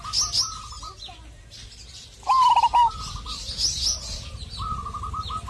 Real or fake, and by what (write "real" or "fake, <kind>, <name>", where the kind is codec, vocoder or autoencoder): real